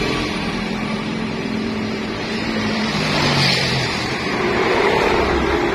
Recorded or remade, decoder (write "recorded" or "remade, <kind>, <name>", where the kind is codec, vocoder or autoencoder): remade, vocoder, BigVGAN v2